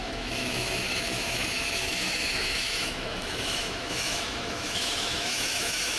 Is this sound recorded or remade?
remade